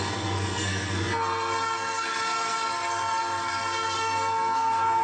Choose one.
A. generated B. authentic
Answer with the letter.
A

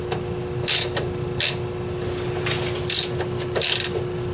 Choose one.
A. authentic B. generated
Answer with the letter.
A